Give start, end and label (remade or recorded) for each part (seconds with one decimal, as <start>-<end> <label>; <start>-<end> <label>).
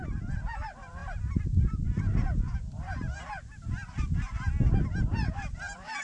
0.0-5.1 recorded; 5.1-6.0 remade